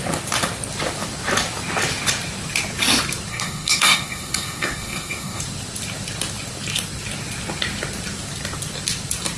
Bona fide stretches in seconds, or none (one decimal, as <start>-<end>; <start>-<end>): 0.0-3.3; 5.4-9.4